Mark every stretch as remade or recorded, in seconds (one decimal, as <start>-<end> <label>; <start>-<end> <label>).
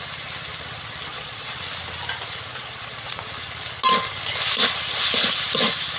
0.0-1.1 recorded; 1.1-1.6 remade; 1.6-2.5 recorded; 2.5-3.3 remade; 3.3-6.0 recorded